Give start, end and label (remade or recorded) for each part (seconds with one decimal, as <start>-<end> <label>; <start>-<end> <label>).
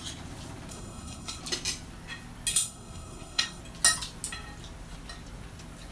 0.0-0.7 recorded; 0.7-1.4 remade; 1.4-2.5 recorded; 2.5-3.6 remade; 3.6-5.9 recorded